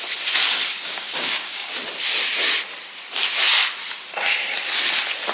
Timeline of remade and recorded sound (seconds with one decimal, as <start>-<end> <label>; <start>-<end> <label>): 0.0-0.7 recorded; 0.7-1.7 remade; 1.7-5.3 recorded